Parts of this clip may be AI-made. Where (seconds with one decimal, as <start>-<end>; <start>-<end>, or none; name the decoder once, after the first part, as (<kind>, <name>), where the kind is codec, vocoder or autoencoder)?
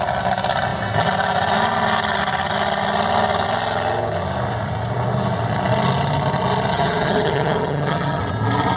6.7-8.2 (vocoder, HiFi-GAN)